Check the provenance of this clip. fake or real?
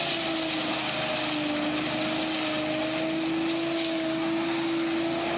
real